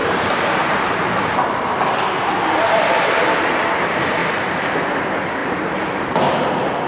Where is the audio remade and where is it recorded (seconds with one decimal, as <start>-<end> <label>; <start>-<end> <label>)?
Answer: 0.0-1.0 remade; 1.0-5.4 recorded; 5.4-6.9 remade